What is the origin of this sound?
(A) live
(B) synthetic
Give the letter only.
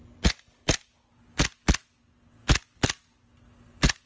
A